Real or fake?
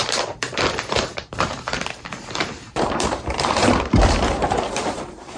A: fake